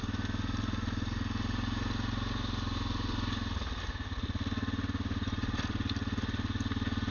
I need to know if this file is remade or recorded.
recorded